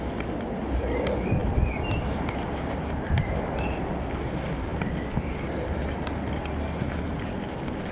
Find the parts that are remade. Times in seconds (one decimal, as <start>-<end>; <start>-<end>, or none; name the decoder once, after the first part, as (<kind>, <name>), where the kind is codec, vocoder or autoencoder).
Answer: none